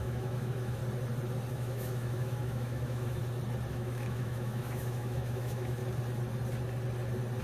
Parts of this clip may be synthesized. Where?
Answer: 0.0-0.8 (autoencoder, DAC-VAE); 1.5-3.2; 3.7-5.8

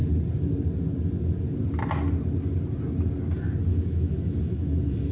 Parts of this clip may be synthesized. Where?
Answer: 3.7-5.1 (autoencoder, DAC-VAE)

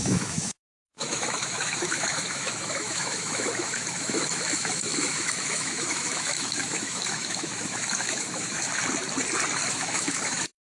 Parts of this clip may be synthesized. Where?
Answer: 0.0-8.8 (autoencoder, DAC-VAE); 9.7-10.7

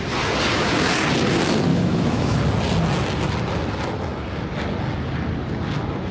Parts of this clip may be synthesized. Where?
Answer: 1.7-2.4 (autoencoder, DAC-VAE)

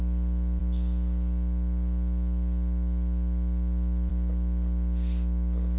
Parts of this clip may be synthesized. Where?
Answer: none

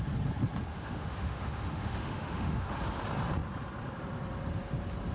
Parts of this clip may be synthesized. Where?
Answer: 0.7-2.7 (autoencoder, DAC-VAE)

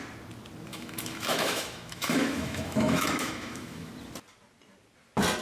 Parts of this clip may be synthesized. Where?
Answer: 0.7-3.9 (autoencoder, DAC-VAE)